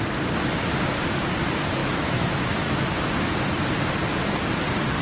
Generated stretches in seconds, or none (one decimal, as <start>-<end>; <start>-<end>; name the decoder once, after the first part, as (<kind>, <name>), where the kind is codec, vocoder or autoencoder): 1.8-2.8 (autoencoder, DAC-VAE)